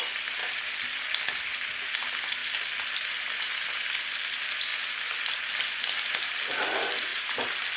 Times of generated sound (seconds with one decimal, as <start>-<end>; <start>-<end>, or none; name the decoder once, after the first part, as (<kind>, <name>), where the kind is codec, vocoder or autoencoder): none